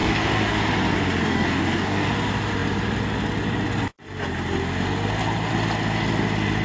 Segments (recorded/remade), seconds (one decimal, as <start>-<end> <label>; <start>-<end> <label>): 0.0-0.6 remade; 0.6-1.2 recorded; 1.2-2.1 remade; 2.1-6.6 recorded